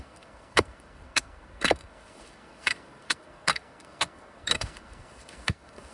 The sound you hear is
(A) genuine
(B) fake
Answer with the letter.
B